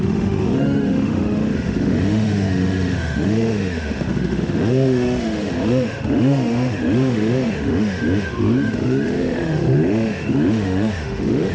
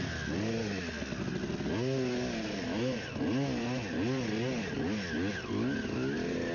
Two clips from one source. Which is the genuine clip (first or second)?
second